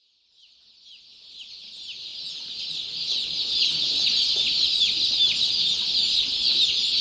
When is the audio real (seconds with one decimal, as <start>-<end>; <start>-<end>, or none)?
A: 0.0-7.0